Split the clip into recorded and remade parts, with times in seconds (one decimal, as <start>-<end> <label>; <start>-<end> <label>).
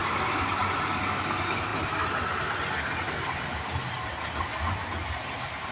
0.0-0.6 recorded; 0.6-1.7 remade; 1.7-5.1 recorded; 5.1-5.7 remade